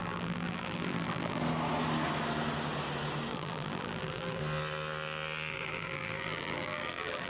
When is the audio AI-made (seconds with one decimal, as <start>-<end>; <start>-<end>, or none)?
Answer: 0.0-1.4; 3.3-4.4; 5.5-7.3